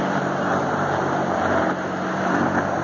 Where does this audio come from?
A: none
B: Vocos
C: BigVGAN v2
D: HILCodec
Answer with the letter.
C